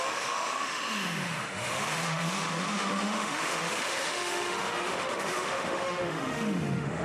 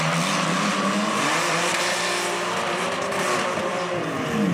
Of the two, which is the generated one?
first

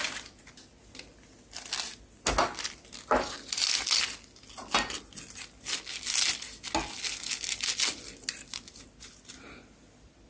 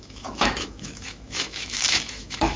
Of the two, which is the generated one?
second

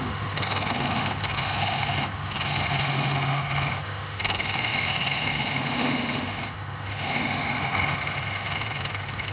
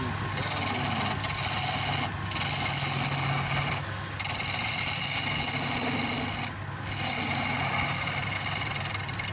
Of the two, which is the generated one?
first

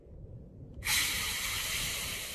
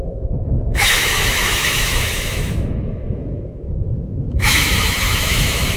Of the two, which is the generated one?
second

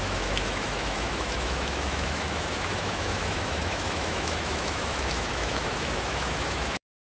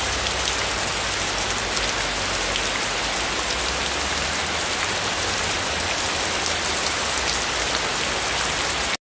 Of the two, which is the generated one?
first